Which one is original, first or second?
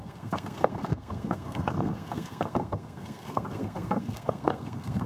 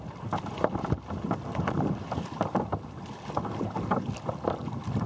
second